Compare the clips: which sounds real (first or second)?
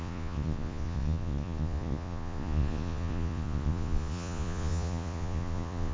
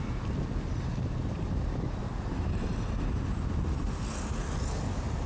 second